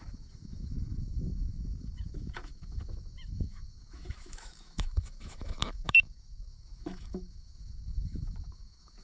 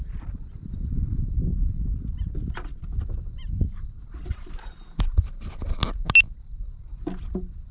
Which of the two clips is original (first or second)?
second